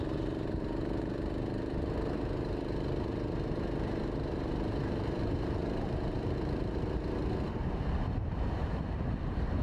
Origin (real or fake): fake